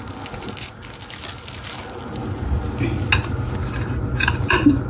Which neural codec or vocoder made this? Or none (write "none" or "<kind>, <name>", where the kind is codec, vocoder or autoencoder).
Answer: none